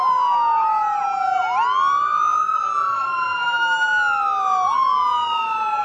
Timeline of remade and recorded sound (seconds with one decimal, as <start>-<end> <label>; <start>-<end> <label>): 0.0-5.8 recorded